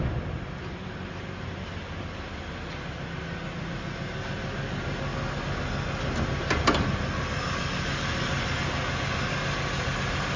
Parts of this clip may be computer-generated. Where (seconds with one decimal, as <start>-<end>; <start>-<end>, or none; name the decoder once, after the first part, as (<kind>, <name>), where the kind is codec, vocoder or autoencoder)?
none